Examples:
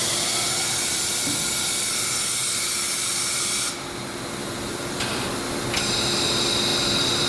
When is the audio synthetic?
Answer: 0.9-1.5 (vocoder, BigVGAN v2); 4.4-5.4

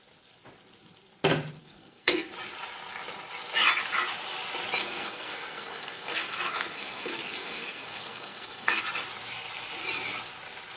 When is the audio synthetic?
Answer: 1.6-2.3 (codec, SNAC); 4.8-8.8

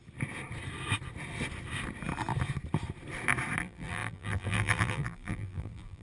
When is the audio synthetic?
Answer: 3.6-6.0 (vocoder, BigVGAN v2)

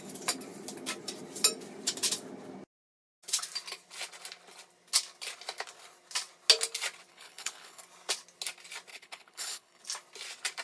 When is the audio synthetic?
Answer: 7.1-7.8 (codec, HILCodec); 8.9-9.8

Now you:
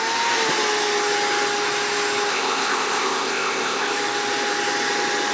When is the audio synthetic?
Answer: 2.3-3.9 (codec, ZipCodec)

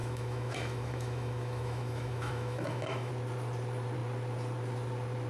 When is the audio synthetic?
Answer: 0.0-3.1 (autoencoder, DAC-VAE)

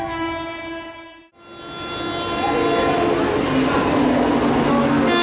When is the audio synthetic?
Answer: none

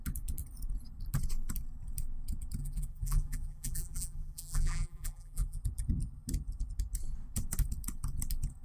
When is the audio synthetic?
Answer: 2.6-5.6 (vocoder, BigVGAN v2)